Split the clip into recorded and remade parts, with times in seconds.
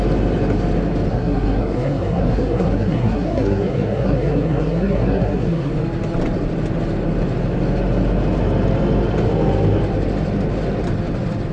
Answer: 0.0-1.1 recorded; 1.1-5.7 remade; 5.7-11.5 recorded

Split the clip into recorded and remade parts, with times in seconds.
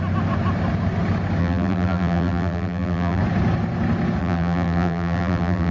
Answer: 0.0-1.4 recorded; 1.4-3.2 remade; 3.2-4.2 recorded; 4.2-5.7 remade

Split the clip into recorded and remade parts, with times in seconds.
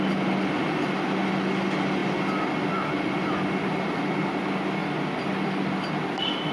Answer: 0.0-6.5 recorded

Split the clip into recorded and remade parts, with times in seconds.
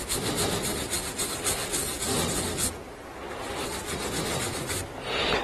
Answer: 0.0-5.4 recorded